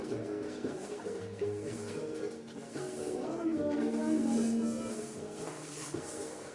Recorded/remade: remade